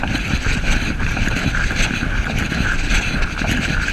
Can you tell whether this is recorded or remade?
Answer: recorded